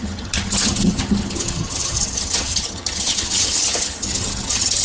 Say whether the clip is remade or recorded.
remade